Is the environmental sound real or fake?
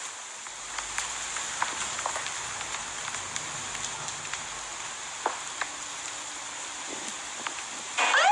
real